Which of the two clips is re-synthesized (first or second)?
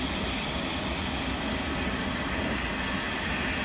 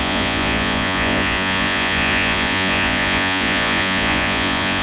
second